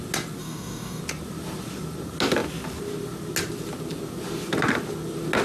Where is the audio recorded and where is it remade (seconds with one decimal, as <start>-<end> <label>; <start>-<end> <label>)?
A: 0.0-0.4 recorded; 0.4-1.0 remade; 1.0-5.4 recorded

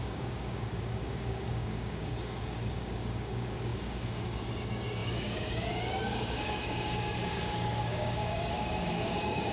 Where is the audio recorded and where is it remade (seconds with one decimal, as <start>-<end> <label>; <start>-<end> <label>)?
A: 0.0-9.5 remade

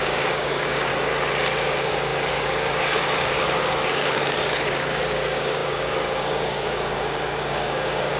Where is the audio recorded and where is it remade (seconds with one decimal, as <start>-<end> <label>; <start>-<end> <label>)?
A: 0.0-0.9 remade; 0.9-1.7 recorded; 1.7-8.2 remade

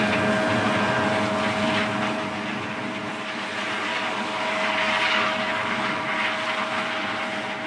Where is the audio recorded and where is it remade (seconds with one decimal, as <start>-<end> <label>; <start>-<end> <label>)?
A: 0.0-3.9 recorded; 3.9-6.0 remade; 6.0-7.7 recorded